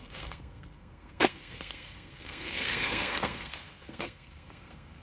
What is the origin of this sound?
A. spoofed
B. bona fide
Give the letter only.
A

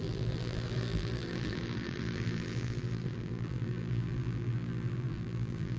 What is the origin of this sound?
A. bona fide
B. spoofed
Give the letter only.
B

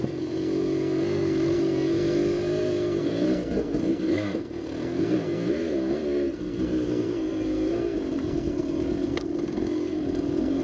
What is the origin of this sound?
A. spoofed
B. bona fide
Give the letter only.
A